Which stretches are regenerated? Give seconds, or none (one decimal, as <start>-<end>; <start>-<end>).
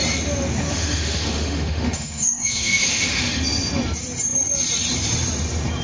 0.7-3.4